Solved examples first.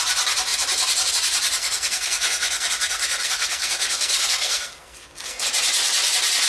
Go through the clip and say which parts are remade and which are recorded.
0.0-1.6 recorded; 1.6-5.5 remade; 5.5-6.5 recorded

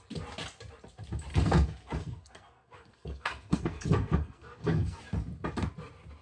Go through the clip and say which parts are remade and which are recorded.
0.0-1.3 recorded; 1.3-5.0 remade; 5.0-6.2 recorded

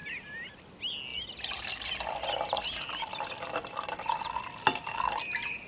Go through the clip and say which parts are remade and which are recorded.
0.0-5.7 recorded

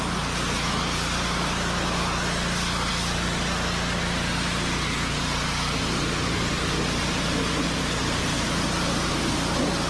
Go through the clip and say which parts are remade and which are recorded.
0.0-9.9 recorded